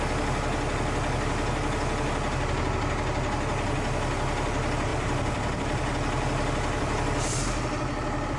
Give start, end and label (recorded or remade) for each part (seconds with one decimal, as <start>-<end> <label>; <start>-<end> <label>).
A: 0.0-4.9 recorded; 4.9-8.4 remade